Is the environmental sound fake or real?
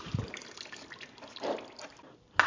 real